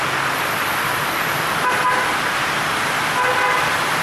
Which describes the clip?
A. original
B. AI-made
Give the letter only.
A